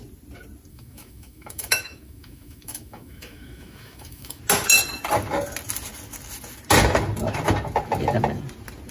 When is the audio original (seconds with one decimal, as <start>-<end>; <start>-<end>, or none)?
0.0-0.7; 4.4-8.9

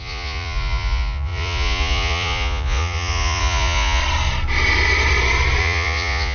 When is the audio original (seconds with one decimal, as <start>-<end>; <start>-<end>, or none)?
4.0-5.6

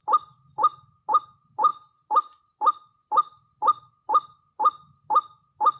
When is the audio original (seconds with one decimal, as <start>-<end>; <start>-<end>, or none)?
0.0-5.8

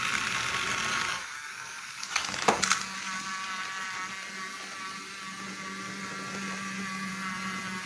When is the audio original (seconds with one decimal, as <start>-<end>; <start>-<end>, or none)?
0.0-0.9; 2.5-7.9

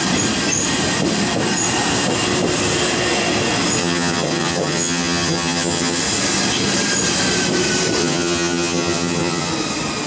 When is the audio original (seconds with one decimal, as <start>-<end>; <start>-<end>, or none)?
0.0-3.8; 6.0-8.0; 9.5-10.1